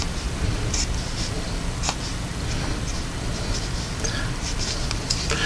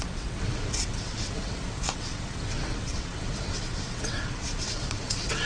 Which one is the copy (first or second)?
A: second